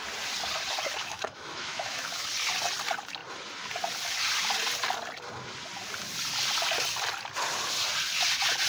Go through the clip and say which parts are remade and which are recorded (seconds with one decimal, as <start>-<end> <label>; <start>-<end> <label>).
0.0-1.0 recorded; 1.0-2.3 remade; 2.3-8.7 recorded